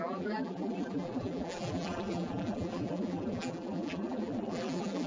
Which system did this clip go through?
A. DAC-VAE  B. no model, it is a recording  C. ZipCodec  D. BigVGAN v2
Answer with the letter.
D